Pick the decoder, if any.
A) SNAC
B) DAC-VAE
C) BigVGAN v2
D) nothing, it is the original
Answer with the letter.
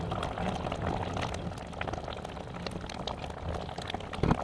D